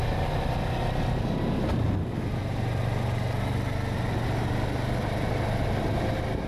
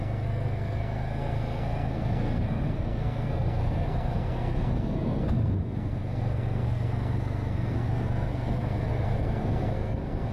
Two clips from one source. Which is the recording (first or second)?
first